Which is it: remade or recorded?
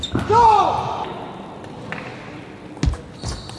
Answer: recorded